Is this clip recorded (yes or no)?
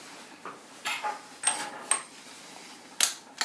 yes